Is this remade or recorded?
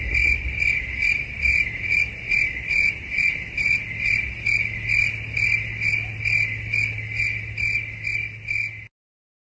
recorded